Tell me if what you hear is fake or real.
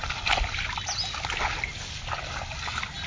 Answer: real